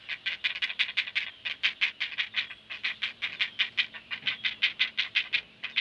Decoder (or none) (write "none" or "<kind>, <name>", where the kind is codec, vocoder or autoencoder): none